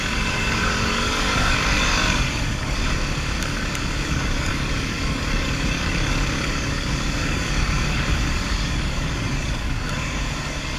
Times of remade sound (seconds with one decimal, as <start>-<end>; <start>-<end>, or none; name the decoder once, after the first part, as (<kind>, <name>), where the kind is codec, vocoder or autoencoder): 0.0-2.8 (codec, DAC); 3.4-10.8